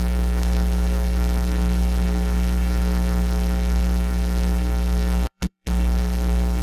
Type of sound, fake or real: fake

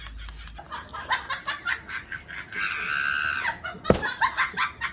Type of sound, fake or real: real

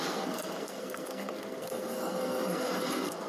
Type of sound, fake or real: fake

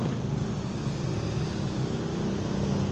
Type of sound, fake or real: real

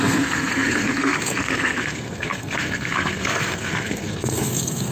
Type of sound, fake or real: fake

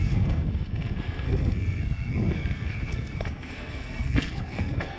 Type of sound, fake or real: fake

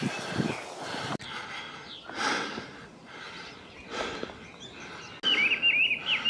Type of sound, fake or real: real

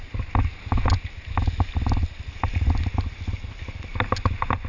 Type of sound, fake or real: real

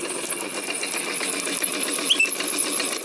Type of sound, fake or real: real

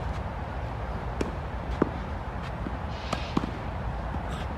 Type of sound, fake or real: real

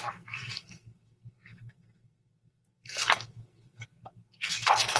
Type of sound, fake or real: fake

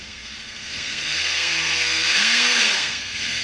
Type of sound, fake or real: fake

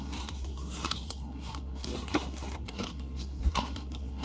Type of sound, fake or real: fake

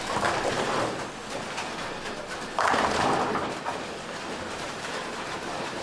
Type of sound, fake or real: real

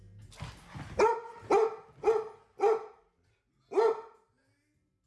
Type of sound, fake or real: real